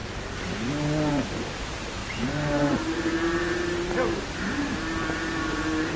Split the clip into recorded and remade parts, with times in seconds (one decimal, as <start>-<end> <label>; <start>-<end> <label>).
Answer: 0.0-1.1 recorded; 1.1-6.0 remade